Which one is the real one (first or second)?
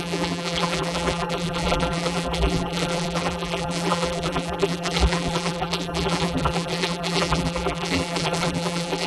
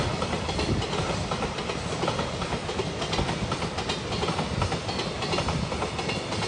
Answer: second